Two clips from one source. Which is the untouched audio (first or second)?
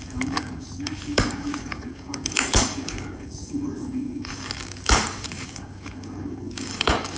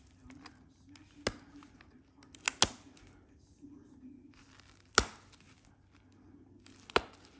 second